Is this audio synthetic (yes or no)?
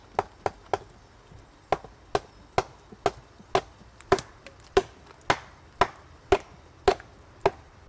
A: no